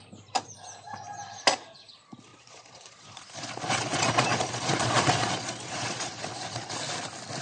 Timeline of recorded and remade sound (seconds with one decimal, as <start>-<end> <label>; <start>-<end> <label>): 0.0-2.3 recorded; 2.3-6.7 remade; 6.7-7.4 recorded